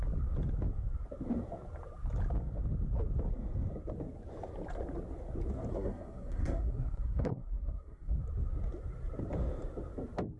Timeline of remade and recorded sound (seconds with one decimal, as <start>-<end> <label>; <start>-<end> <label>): 0.0-5.7 recorded; 5.7-8.2 remade; 8.2-10.4 recorded